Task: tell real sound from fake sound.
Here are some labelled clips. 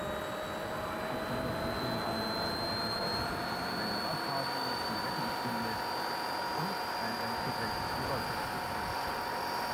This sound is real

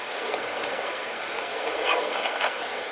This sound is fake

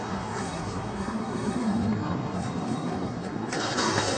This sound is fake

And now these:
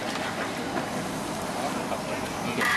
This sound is real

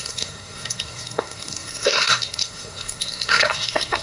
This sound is fake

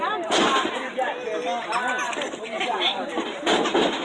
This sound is real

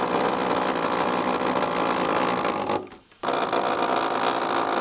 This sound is real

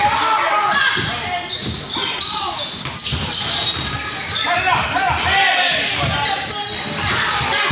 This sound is real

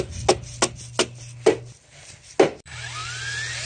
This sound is real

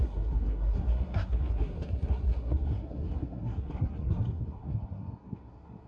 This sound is fake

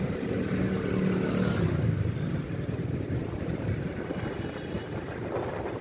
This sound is real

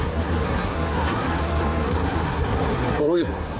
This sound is fake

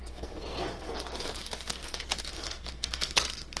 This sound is fake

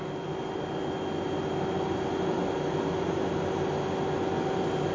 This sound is real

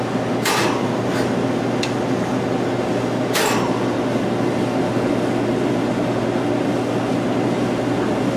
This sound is real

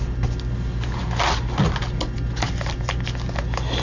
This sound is real